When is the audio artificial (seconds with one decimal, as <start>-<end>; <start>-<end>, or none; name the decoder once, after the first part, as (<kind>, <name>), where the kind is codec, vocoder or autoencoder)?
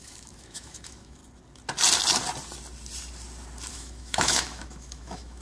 0.0-1.2 (autoencoder, DAC-VAE); 3.7-5.4